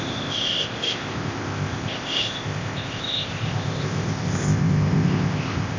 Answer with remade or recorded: remade